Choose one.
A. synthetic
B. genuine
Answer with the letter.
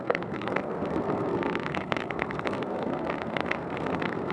A